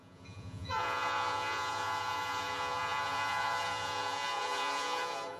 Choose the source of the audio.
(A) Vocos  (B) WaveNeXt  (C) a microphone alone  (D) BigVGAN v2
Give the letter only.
A